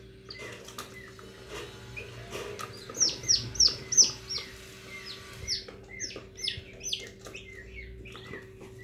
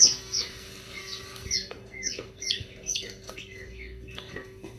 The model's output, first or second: second